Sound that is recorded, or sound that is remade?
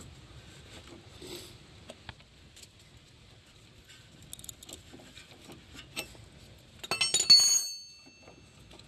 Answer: recorded